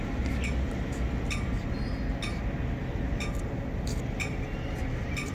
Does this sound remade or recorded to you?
recorded